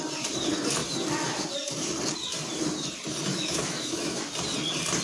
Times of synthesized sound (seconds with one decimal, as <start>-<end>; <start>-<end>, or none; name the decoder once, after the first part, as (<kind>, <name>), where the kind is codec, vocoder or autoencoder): 3.3-4.2 (autoencoder, DAC-VAE)